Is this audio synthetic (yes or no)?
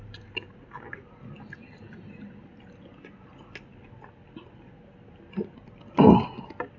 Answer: no